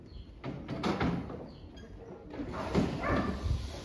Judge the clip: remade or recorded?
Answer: recorded